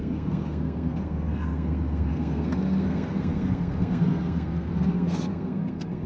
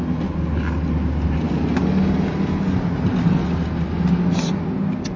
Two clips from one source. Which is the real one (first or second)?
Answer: second